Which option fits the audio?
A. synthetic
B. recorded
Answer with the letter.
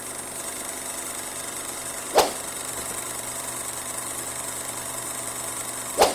B